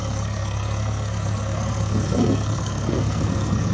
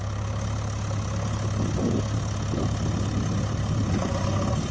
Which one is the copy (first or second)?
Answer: first